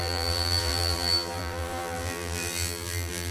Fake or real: fake